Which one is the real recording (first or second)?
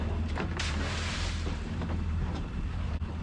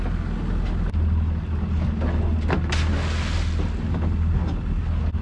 second